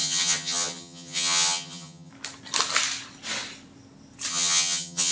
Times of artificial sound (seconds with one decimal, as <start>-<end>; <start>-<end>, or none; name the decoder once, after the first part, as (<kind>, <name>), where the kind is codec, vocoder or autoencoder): 0.0-2.1 (vocoder, HiFi-GAN); 4.3-5.1